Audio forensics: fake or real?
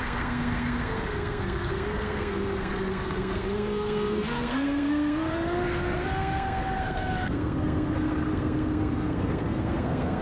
fake